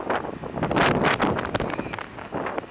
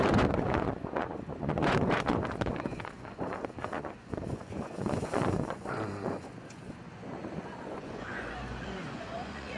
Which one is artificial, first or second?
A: second